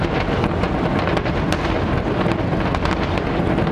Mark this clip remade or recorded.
recorded